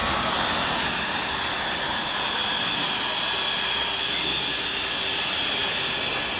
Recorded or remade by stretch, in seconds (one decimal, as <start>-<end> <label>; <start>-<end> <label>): 0.0-6.4 recorded